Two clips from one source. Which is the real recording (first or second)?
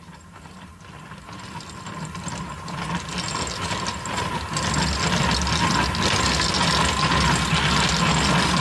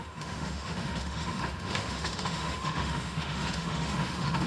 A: first